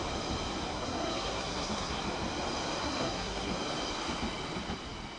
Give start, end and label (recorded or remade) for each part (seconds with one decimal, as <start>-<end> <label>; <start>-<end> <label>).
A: 0.0-0.7 recorded; 0.7-2.0 remade; 2.0-2.8 recorded; 2.8-3.5 remade; 3.5-5.2 recorded